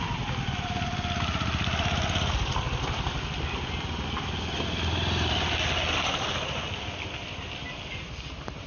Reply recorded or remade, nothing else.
recorded